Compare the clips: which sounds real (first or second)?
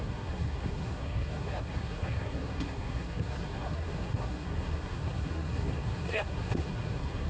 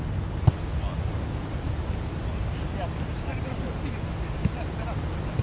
second